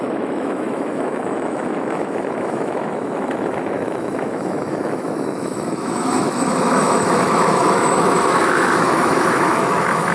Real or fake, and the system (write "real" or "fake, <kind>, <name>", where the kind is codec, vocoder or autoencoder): fake, autoencoder, DAC-VAE